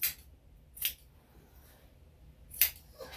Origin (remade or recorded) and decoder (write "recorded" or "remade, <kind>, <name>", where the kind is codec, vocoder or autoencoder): recorded